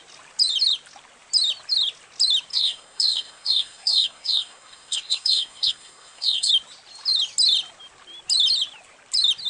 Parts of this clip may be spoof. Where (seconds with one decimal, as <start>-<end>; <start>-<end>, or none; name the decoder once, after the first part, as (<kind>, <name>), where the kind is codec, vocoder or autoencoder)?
2.5-6.5 (codec, SNAC)